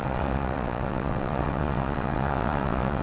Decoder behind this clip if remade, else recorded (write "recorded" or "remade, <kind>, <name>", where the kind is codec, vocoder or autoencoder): remade, vocoder, WaveNeXt